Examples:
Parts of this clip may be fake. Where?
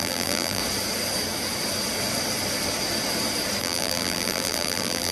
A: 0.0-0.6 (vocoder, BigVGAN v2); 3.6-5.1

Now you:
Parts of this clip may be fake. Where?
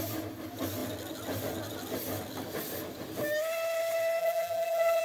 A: 4.2-5.0 (vocoder, BigVGAN v2)